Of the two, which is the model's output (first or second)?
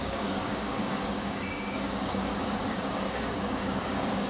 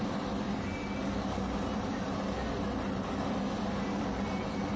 first